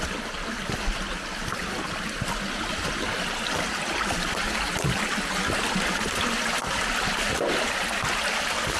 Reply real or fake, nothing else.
real